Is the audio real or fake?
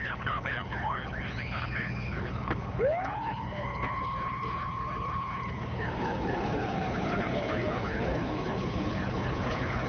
fake